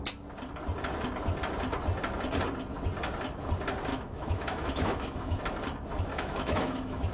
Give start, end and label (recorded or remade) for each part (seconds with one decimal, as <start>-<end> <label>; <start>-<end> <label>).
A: 0.0-3.9 recorded; 3.9-5.4 remade; 5.4-6.1 recorded; 6.1-7.1 remade